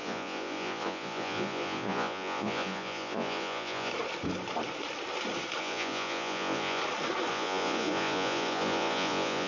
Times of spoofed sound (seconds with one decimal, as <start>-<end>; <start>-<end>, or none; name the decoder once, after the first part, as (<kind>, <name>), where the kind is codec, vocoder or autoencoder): 0.0-3.9 (vocoder, Vocos); 5.6-6.8; 7.3-9.5